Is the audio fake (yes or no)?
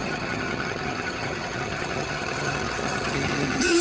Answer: yes